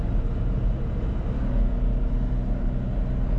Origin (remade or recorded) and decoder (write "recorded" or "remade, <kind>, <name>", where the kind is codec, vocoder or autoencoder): recorded